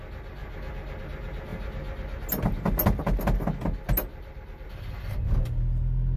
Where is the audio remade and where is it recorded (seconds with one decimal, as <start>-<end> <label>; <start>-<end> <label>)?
0.0-4.1 recorded; 4.1-5.2 remade; 5.2-6.2 recorded